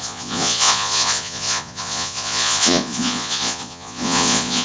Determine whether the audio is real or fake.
fake